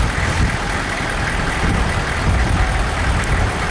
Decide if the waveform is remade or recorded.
recorded